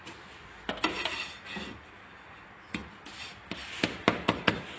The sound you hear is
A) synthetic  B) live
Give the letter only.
B